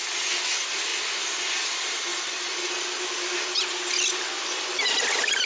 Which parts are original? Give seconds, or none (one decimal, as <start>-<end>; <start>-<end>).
0.0-5.5